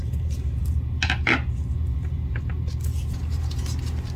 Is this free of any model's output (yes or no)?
yes